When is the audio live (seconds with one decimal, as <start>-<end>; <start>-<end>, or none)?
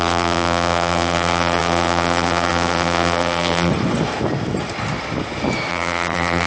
3.7-5.7